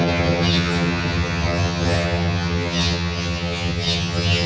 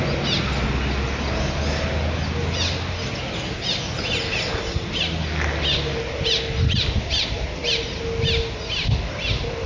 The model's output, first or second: first